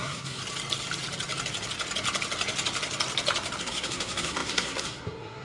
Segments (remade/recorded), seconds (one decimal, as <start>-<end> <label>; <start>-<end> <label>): 0.0-0.4 remade; 0.4-3.6 recorded; 3.6-5.4 remade